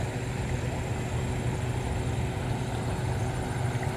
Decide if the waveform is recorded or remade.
recorded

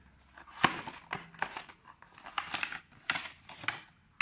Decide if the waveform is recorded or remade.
recorded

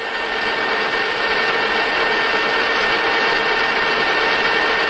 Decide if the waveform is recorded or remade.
recorded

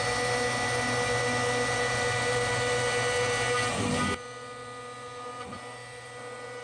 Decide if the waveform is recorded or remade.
recorded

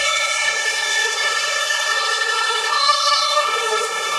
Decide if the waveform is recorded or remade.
remade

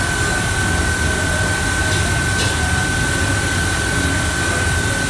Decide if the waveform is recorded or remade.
recorded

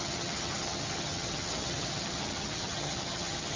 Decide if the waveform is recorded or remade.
remade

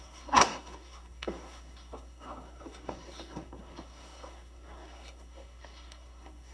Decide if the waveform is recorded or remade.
remade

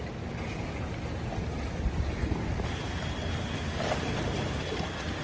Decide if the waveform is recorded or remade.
recorded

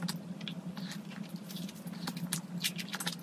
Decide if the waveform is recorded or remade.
recorded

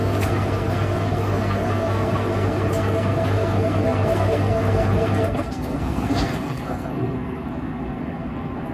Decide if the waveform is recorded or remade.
remade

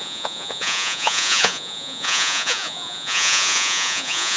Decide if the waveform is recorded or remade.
remade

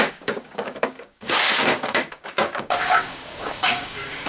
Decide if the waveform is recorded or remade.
remade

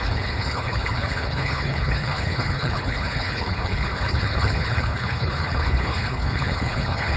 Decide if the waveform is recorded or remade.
remade